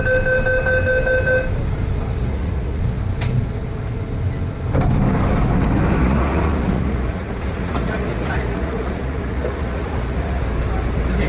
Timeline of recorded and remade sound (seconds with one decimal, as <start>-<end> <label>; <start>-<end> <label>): 0.0-2.2 recorded; 2.2-2.8 remade; 2.8-6.0 recorded; 6.0-10.4 remade; 10.4-11.3 recorded